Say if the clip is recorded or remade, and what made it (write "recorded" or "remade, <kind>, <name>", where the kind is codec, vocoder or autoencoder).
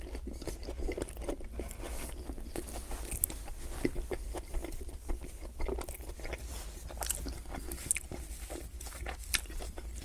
recorded